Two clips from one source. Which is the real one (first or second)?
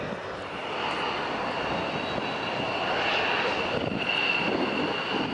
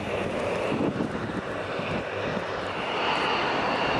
first